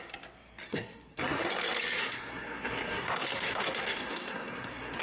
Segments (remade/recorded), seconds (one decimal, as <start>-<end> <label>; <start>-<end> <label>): 0.0-0.6 recorded; 0.6-1.5 remade; 1.5-2.0 recorded; 2.0-5.0 remade